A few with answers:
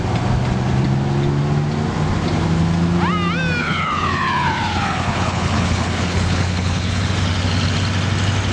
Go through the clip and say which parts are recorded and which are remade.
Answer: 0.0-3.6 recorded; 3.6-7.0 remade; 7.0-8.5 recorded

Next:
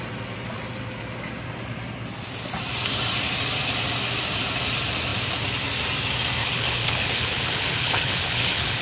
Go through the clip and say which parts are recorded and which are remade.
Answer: 0.0-6.4 recorded; 6.4-8.8 remade

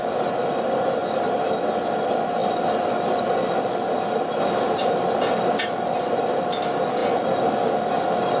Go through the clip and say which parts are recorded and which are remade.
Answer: 0.0-8.4 recorded

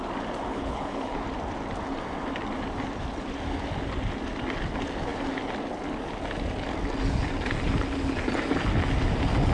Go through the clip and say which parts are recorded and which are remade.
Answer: 0.0-0.5 recorded; 0.5-1.2 remade; 1.2-9.5 recorded

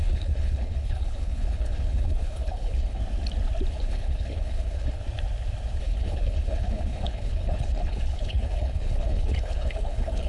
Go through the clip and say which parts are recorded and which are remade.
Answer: 0.0-3.0 remade; 3.0-3.7 recorded; 3.7-5.0 remade; 5.0-5.8 recorded; 5.8-10.3 remade

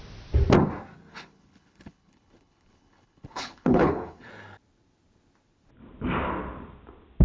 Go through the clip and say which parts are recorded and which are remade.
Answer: 0.0-1.1 recorded; 1.1-4.3 remade; 4.3-7.2 recorded

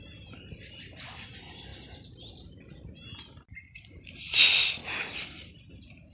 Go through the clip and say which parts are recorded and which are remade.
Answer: 0.0-6.1 recorded

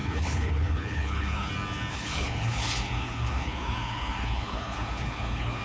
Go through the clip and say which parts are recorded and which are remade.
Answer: 0.0-1.5 remade; 1.5-1.9 recorded; 1.9-5.6 remade